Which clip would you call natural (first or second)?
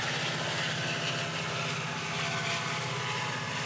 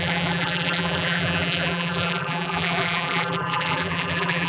first